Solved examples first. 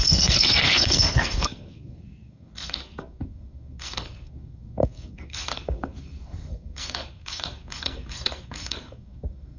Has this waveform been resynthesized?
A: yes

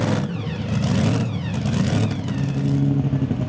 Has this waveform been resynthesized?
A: no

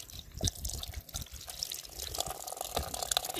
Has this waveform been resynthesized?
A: no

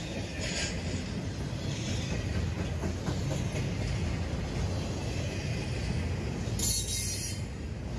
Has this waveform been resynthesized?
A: no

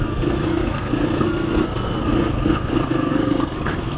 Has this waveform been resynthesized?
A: yes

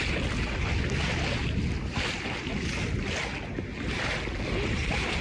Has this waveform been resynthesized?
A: no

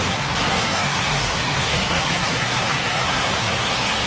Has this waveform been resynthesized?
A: yes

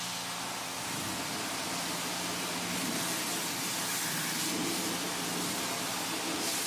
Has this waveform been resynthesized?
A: no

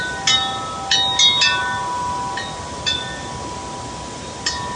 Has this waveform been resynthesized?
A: no